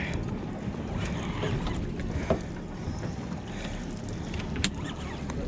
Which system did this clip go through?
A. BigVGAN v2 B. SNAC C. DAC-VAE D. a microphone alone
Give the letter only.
D